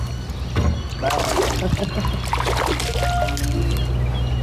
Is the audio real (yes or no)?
yes